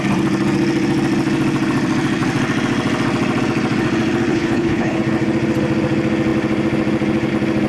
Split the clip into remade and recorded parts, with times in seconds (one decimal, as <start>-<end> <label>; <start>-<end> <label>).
0.0-4.3 recorded; 4.3-5.0 remade; 5.0-7.7 recorded